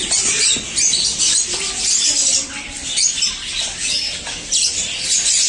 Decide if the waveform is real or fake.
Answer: real